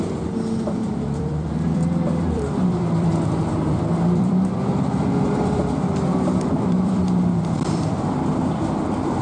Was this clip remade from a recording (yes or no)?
yes